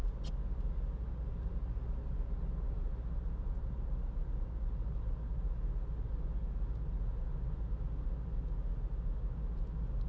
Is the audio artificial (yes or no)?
no